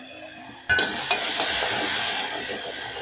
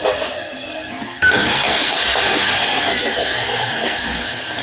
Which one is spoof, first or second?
second